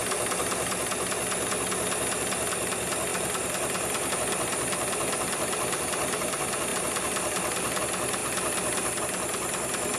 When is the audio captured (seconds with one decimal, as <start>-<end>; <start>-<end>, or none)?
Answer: 0.0-10.0